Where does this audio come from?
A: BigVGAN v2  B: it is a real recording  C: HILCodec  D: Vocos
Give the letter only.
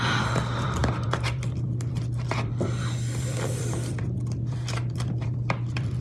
A